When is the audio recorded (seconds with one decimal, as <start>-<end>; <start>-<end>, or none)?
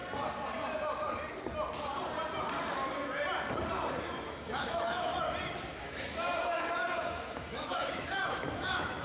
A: 0.0-4.3; 5.1-5.8